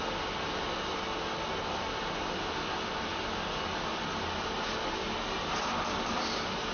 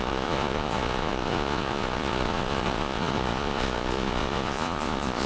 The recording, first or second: first